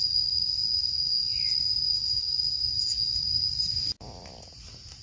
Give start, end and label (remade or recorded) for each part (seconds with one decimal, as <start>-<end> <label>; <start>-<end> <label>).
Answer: 0.0-5.0 recorded